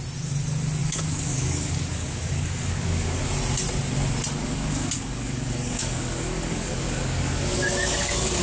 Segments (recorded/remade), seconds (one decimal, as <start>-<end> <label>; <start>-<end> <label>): 0.0-0.8 recorded; 0.8-3.2 remade; 3.2-4.4 recorded; 4.4-8.4 remade